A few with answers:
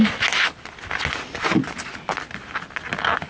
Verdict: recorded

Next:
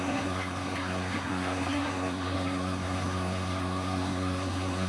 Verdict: remade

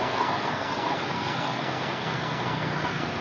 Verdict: remade